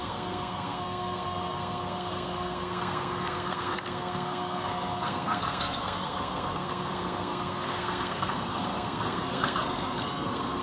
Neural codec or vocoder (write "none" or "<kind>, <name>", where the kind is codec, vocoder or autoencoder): codec, SNAC